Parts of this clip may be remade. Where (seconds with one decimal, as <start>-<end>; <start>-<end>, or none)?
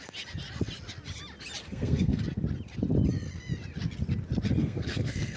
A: 1.6-2.2; 4.6-5.4